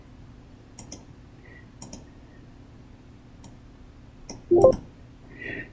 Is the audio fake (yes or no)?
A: no